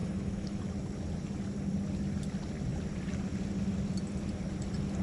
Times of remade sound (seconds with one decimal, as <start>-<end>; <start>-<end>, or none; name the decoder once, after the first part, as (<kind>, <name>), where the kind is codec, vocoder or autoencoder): 0.0-0.6 (autoencoder, DAC-VAE)